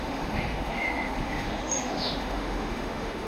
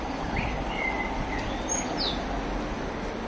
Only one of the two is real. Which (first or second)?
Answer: second